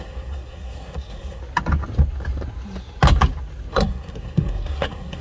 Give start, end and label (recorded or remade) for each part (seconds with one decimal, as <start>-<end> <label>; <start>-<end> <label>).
0.0-1.4 remade; 1.4-3.7 recorded; 3.7-5.2 remade